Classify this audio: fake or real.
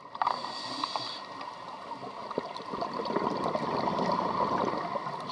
real